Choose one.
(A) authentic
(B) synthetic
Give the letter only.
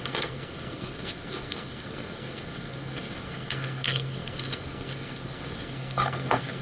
B